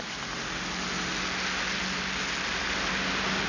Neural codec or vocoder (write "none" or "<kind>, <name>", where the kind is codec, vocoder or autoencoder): none